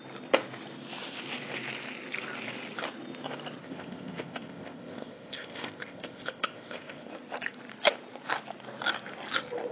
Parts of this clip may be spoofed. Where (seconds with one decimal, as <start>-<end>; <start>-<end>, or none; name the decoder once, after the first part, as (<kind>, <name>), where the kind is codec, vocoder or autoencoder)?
3.6-7.1 (codec, ZipCodec)